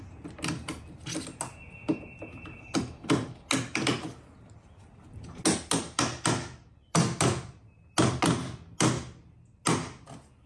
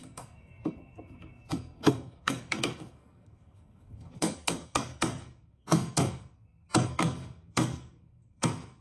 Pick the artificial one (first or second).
second